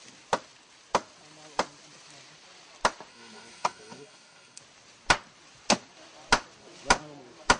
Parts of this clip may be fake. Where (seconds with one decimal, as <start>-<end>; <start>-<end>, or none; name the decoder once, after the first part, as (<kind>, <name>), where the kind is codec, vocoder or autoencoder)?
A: 3.1-4.6 (codec, SNAC)